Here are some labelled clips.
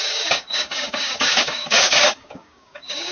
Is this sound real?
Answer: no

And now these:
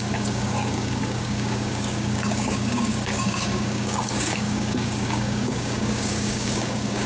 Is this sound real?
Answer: no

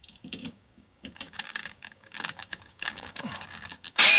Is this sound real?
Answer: no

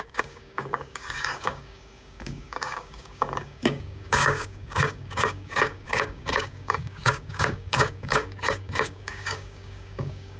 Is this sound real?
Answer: no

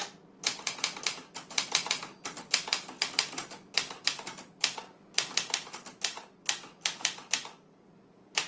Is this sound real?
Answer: yes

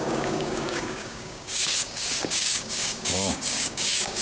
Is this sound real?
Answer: no